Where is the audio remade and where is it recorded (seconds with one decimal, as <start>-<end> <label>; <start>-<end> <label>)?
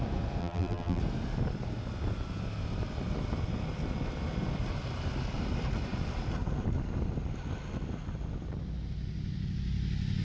0.0-0.4 recorded; 0.4-1.0 remade; 1.0-10.2 recorded